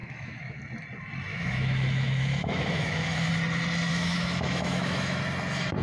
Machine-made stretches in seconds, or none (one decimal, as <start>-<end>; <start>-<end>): 0.0-0.6; 1.3-3.3; 3.9-5.2